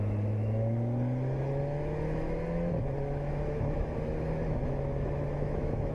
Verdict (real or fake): fake